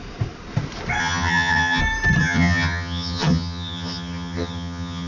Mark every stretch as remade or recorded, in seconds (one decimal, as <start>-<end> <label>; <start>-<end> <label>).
0.0-1.0 recorded; 1.0-1.8 remade; 1.8-2.2 recorded; 2.2-5.1 remade